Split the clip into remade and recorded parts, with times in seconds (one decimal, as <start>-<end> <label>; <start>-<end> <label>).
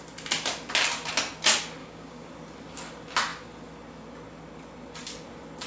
0.0-1.8 recorded; 1.8-2.3 remade; 2.3-5.7 recorded